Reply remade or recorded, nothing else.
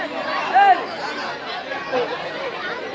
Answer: recorded